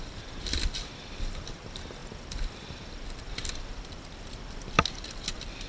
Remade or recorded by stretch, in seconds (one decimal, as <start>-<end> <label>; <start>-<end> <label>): 0.0-5.7 recorded